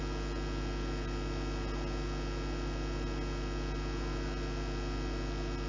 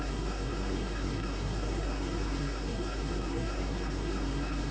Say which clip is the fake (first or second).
second